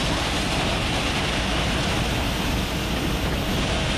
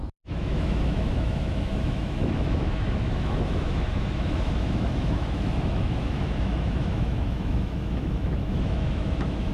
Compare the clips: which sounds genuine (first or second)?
first